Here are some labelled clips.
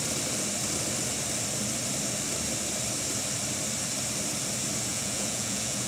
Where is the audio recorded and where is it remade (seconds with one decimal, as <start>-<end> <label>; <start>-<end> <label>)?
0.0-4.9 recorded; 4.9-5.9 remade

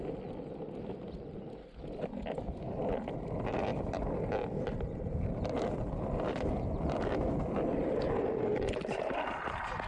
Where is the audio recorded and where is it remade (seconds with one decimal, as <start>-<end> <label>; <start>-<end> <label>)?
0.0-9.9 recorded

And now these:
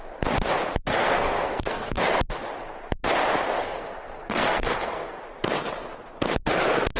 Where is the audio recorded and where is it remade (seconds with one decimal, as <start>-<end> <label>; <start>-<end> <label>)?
0.0-0.9 recorded; 0.9-2.0 remade; 2.0-3.6 recorded; 3.6-5.1 remade; 5.1-7.0 recorded